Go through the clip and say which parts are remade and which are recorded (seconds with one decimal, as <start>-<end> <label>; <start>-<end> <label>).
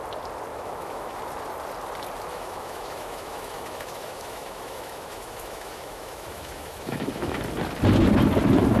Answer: 0.0-0.5 recorded; 0.5-1.2 remade; 1.2-2.3 recorded; 2.3-7.4 remade; 7.4-8.8 recorded